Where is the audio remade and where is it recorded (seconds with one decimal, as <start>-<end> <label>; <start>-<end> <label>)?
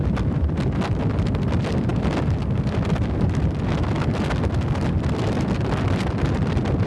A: 0.0-6.9 recorded